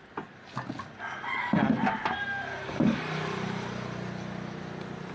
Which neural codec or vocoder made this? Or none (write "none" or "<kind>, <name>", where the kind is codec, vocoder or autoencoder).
none